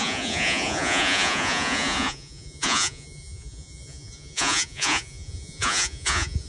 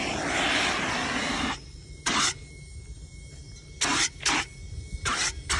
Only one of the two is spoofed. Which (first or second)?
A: first